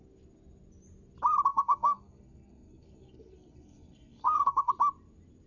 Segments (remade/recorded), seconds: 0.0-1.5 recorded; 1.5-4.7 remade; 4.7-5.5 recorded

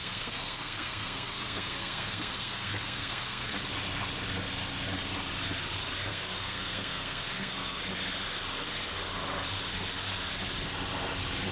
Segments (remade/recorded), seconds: 0.0-3.5 remade; 3.5-6.1 recorded; 6.1-7.8 remade; 7.8-11.5 recorded

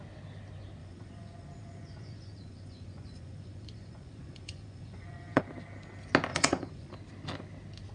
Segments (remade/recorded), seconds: 0.0-0.8 recorded; 0.8-5.4 remade; 5.4-6.3 recorded; 6.3-6.9 remade; 6.9-7.9 recorded

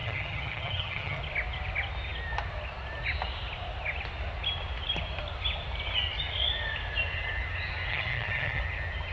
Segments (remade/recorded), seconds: 0.0-1.2 remade; 1.2-7.9 recorded; 7.9-8.6 remade; 8.6-9.1 recorded

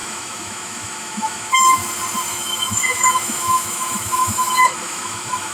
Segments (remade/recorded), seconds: 0.0-1.8 remade; 1.8-2.3 recorded; 2.3-5.5 remade

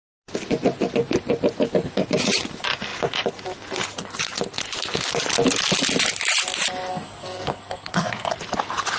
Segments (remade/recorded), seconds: 0.0-6.9 recorded; 6.9-8.3 remade; 8.3-9.0 recorded

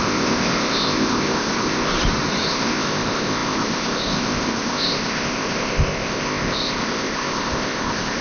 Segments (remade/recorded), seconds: 0.0-1.9 remade; 1.9-2.5 recorded; 2.5-8.2 remade